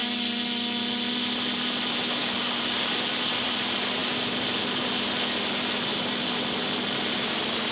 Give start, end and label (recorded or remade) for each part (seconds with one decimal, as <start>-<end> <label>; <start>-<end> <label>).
0.0-2.2 recorded; 2.2-2.9 remade; 2.9-7.7 recorded